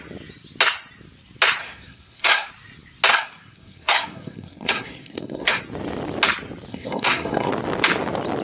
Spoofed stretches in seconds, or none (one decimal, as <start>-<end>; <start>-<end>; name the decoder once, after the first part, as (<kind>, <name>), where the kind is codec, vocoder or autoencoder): 1.6-2.5 (codec, SNAC); 3.1-5.6; 6.7-7.5